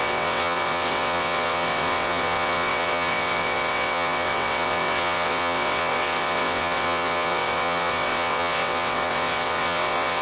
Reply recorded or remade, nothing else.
remade